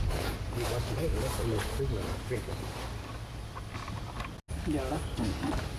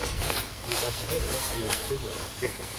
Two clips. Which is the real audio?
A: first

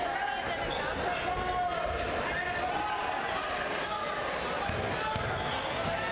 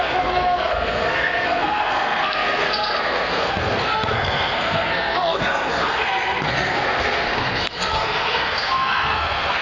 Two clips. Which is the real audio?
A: first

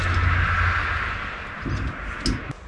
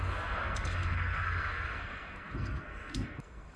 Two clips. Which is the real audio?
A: first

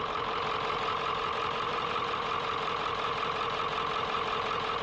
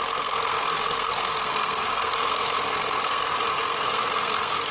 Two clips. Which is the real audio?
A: first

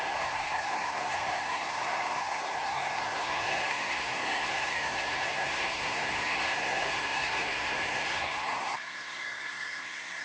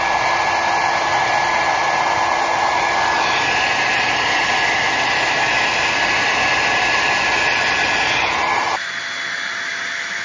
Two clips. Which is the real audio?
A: second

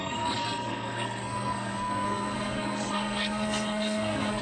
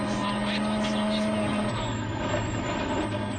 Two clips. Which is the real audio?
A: second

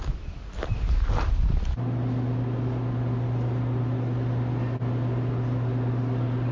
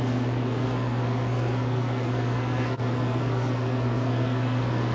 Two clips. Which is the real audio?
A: first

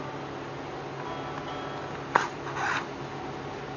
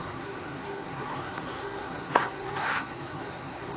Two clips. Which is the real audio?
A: first